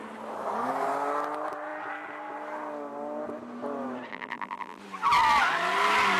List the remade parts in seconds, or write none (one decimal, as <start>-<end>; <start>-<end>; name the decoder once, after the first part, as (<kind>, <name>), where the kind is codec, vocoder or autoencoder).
4.1-4.8 (vocoder, BigVGAN v2)